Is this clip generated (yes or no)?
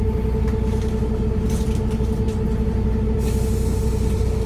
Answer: no